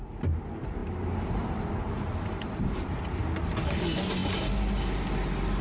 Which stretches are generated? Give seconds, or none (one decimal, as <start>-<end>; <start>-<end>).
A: none